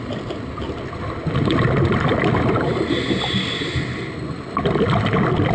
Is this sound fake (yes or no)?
no